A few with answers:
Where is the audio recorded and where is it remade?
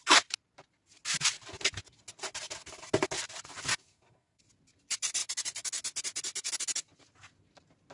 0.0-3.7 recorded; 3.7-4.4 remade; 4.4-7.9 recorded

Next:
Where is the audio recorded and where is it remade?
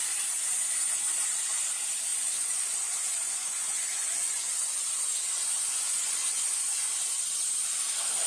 0.0-2.1 recorded; 2.1-6.9 remade; 6.9-8.3 recorded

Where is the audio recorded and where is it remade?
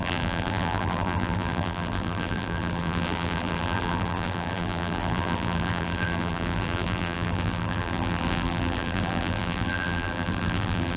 0.0-11.0 remade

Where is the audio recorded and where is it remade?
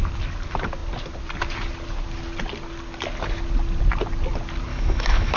0.0-4.7 recorded; 4.7-5.4 remade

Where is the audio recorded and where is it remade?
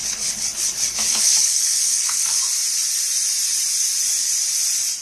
0.0-2.4 remade; 2.4-5.0 recorded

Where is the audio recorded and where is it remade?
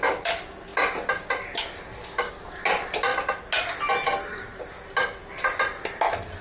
0.0-6.4 recorded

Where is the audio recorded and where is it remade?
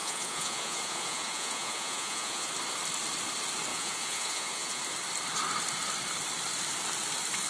0.0-2.5 remade; 2.5-3.7 recorded; 3.7-4.8 remade; 4.8-7.5 recorded